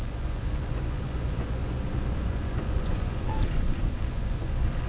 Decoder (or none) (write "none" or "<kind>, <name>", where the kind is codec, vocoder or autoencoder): vocoder, Vocos